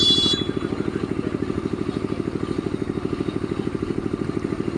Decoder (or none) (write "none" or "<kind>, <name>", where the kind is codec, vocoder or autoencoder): none